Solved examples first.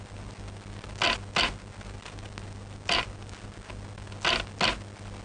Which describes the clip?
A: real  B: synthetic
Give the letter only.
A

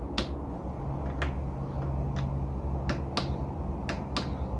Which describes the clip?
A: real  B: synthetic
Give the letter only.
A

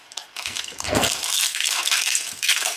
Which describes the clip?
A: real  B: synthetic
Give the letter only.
B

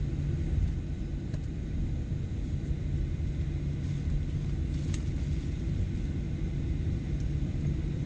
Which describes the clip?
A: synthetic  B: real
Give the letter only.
B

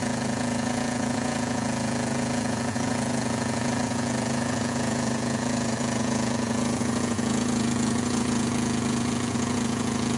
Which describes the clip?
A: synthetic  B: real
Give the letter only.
A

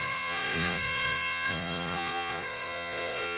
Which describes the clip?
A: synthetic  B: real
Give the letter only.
A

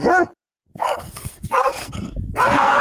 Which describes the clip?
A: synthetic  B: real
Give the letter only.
A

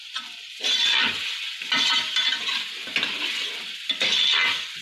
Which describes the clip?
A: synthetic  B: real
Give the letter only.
B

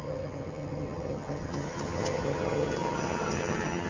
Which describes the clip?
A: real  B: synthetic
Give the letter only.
B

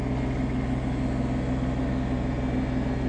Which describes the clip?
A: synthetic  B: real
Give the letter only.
B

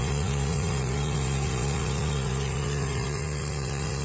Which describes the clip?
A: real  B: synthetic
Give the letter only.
B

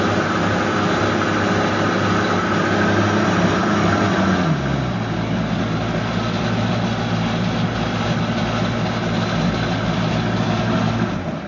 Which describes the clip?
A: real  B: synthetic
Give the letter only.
A